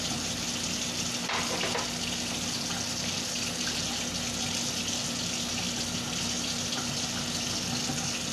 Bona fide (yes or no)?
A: yes